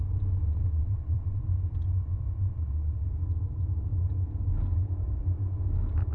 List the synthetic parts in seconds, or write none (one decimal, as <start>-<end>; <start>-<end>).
0.4-1.4; 2.5-3.1